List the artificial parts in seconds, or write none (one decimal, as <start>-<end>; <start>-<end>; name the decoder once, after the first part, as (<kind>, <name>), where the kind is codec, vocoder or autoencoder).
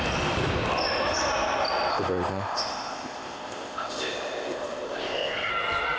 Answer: 1.9-5.5 (codec, ZipCodec)